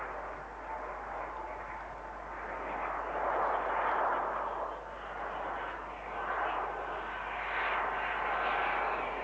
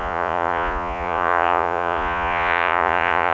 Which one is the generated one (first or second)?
second